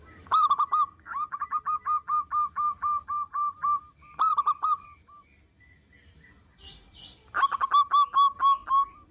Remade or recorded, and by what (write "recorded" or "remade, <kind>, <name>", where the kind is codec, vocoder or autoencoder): recorded